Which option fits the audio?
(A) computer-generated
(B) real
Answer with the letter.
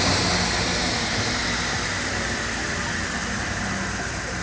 B